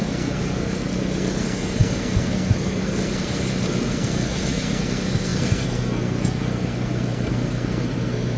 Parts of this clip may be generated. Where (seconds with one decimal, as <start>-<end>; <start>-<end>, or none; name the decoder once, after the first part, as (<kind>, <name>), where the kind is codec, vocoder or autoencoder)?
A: 0.0-8.4 (codec, SNAC)